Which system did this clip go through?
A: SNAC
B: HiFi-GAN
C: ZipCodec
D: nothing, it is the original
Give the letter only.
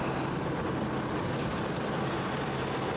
D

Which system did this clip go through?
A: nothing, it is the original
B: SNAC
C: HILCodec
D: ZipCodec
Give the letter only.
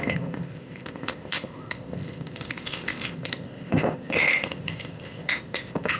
D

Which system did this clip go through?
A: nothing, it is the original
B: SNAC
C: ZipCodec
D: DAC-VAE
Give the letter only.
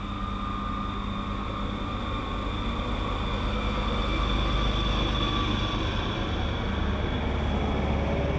A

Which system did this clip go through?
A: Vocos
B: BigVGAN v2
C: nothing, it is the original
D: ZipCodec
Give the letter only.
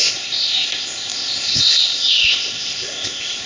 D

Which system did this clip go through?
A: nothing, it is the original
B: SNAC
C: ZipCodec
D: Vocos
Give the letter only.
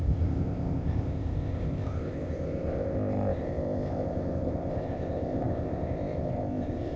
C